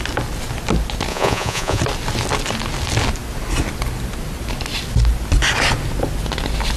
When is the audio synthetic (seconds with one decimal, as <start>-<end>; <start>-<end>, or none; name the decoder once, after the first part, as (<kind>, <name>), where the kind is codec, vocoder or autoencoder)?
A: 1.1-1.8 (vocoder, Vocos)